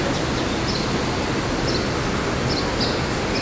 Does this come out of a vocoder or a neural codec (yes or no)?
no